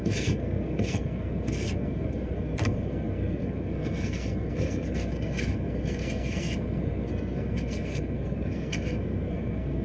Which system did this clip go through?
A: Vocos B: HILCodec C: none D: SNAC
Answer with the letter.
D